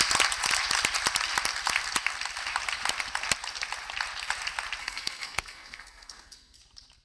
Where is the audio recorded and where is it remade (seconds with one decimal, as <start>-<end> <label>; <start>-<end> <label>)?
0.0-4.8 recorded; 4.8-6.6 remade; 6.6-7.0 recorded